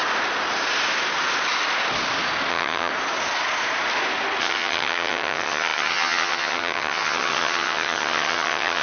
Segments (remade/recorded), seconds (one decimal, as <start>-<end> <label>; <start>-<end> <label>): 0.0-2.5 recorded; 2.5-2.9 remade; 2.9-4.4 recorded; 4.4-8.8 remade